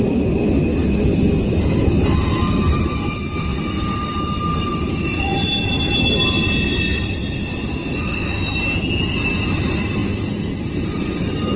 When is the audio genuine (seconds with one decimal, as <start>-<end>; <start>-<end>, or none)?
0.0-11.6